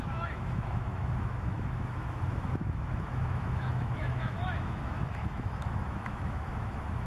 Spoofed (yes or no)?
yes